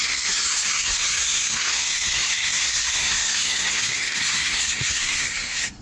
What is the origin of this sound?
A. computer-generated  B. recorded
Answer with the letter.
A